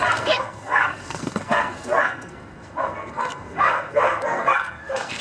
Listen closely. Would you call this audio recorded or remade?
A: remade